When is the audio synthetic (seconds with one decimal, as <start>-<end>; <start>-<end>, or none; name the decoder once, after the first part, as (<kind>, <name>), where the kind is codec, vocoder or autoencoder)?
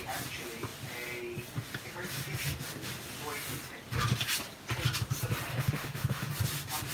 5.5-6.3 (autoencoder, DAC-VAE)